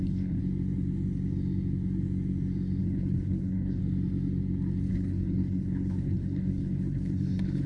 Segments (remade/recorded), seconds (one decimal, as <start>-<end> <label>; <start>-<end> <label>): 0.0-0.4 remade; 0.4-2.8 recorded; 2.8-3.8 remade; 3.8-4.9 recorded; 4.9-7.7 remade